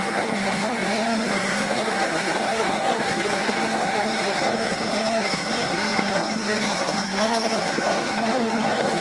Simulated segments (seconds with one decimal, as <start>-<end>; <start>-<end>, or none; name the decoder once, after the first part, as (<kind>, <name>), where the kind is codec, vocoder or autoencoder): 0.0-9.0 (codec, SNAC)